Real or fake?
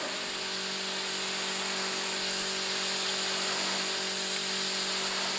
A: real